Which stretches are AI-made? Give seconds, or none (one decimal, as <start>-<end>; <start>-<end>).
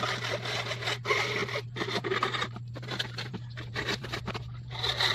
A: 1.4-4.2